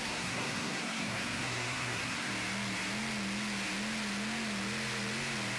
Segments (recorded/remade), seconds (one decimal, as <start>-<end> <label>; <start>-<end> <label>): 0.0-2.3 remade; 2.3-5.6 recorded